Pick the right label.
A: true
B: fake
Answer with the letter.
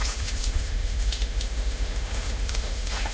B